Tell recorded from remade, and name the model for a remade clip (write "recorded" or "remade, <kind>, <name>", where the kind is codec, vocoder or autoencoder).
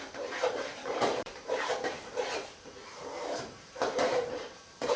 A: remade, vocoder, BigVGAN v2